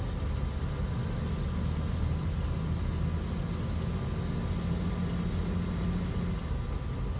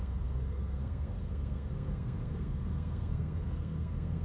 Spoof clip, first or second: second